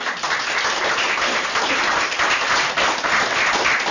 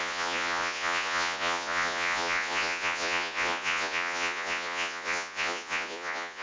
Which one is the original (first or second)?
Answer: first